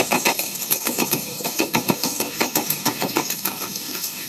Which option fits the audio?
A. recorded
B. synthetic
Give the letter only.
B